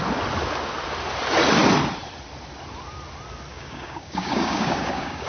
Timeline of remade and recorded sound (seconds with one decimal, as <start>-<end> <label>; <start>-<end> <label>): 0.0-3.5 recorded; 3.5-5.3 remade